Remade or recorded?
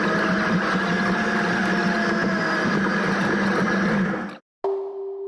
recorded